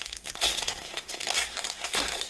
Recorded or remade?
remade